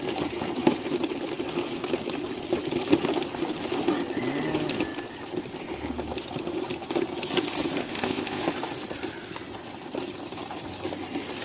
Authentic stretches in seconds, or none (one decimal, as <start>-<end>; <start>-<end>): 0.0-7.8; 8.4-11.4